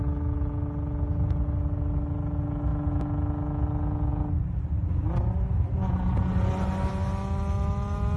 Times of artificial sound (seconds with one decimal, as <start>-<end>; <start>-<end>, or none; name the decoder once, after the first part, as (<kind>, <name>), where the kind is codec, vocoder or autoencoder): none